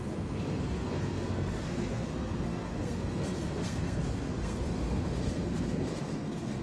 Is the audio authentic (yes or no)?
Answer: no